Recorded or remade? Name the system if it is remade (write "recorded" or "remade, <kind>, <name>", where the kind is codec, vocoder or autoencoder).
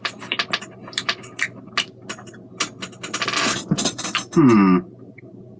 recorded